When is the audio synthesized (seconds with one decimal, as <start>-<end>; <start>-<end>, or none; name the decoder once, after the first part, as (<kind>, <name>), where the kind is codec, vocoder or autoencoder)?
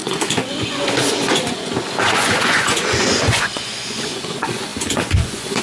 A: 0.0-5.6 (vocoder, Vocos)